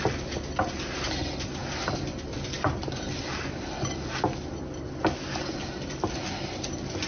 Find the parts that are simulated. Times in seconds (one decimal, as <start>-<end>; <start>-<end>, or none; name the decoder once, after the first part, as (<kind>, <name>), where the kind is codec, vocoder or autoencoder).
none